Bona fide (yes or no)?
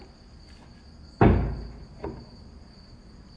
yes